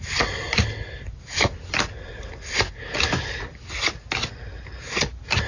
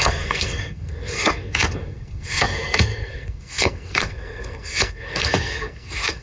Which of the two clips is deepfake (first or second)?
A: second